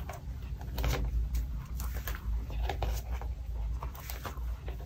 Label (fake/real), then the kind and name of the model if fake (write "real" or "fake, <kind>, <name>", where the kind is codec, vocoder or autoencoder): real